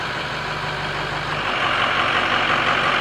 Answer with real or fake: real